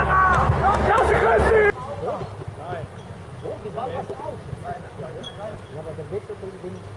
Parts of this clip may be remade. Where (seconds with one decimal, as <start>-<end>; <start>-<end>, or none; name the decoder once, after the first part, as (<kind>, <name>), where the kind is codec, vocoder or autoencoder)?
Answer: 2.9-5.3 (vocoder, Vocos)